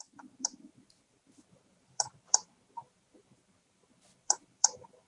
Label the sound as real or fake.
fake